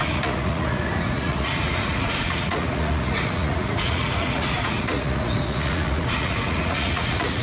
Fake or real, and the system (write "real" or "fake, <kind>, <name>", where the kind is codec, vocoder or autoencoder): fake, vocoder, Vocos